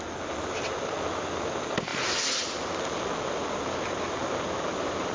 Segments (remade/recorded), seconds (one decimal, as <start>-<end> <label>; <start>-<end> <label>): 0.0-5.1 recorded